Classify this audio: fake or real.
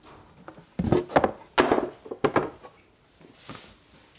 real